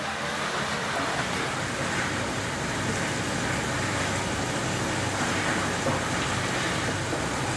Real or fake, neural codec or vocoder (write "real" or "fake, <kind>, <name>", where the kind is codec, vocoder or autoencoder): real